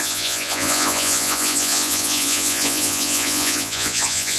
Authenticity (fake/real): fake